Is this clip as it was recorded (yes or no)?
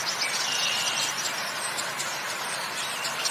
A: yes